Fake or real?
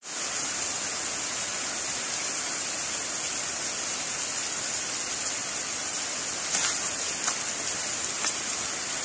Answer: real